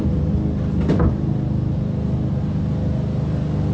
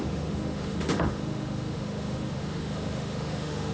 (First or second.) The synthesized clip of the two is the second